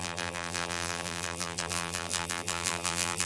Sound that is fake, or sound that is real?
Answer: fake